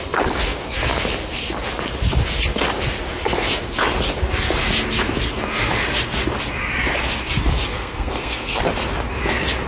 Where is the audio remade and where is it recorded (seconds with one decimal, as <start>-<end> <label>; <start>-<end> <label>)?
0.0-7.7 recorded; 7.7-8.6 remade; 8.6-9.7 recorded